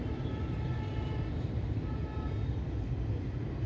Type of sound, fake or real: real